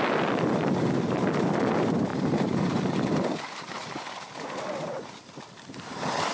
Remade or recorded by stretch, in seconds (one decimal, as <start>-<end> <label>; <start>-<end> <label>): 0.0-6.3 recorded